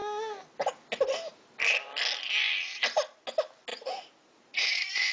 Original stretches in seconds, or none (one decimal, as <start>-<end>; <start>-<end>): 0.0-3.7